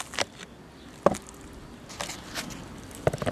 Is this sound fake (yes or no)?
no